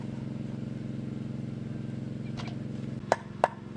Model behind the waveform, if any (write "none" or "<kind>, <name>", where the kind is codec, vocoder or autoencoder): none